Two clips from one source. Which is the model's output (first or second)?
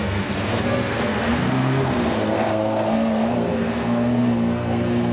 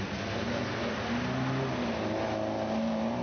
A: first